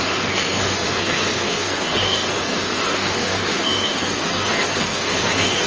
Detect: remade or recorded remade